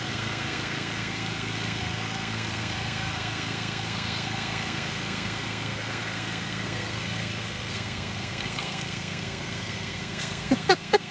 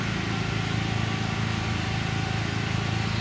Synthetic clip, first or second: first